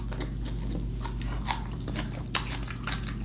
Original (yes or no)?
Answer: yes